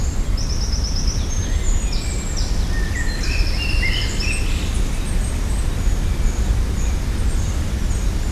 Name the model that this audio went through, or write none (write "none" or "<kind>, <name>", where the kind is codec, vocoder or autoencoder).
none